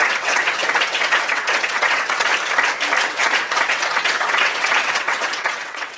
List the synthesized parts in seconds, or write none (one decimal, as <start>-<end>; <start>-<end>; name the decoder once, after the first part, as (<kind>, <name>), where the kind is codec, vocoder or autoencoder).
0.0-2.3 (vocoder, WaveNeXt); 3.0-6.0